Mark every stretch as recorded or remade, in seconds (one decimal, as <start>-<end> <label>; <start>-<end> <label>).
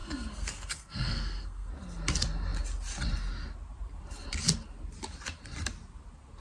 0.0-1.7 remade; 1.7-6.4 recorded